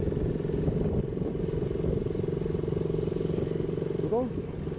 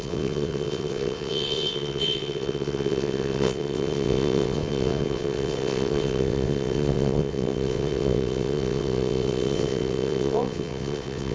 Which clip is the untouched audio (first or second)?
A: first